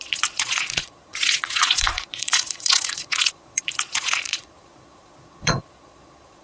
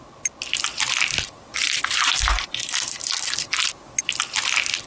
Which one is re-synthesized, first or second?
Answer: first